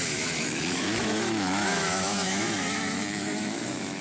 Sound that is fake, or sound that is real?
fake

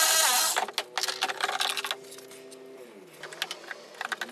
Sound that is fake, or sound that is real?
real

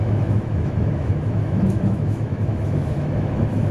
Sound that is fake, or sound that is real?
fake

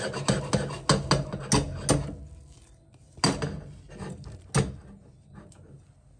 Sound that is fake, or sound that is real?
real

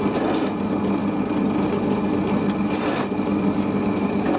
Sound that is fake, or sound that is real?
real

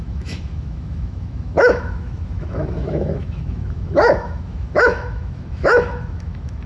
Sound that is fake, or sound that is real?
fake